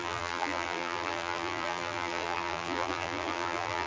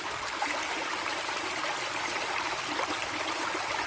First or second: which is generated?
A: first